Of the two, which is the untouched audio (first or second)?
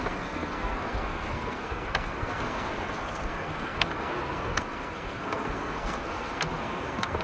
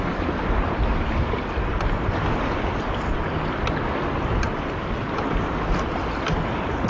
second